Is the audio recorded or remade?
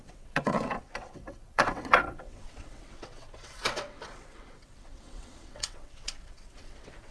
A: remade